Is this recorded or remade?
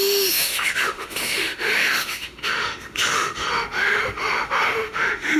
remade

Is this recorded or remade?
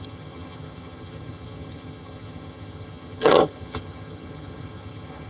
remade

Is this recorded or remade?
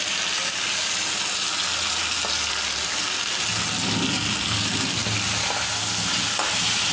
recorded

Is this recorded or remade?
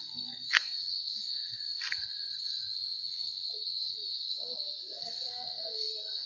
remade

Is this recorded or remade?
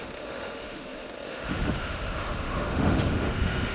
remade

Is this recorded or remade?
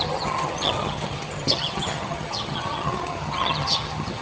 remade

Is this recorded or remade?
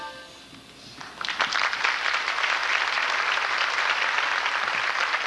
remade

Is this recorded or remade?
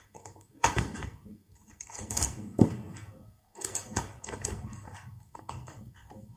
remade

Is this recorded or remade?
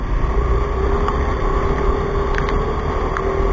recorded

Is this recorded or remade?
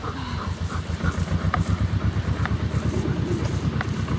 recorded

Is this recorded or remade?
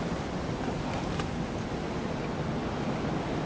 recorded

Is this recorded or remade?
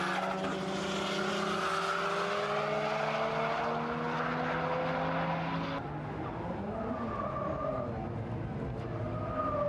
recorded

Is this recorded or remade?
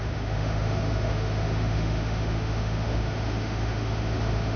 remade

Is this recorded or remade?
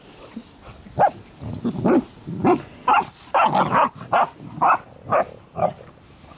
recorded